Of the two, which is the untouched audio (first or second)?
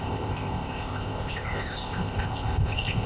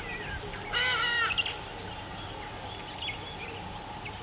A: second